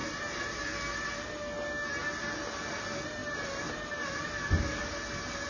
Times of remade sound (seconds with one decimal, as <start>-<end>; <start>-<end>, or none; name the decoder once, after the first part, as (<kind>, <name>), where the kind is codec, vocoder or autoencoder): none